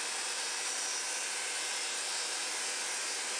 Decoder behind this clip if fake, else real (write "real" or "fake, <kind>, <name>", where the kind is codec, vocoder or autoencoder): real